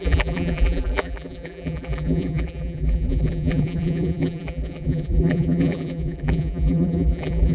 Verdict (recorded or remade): remade